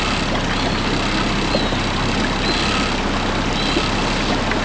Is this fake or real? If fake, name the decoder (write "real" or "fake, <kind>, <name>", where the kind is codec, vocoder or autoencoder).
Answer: real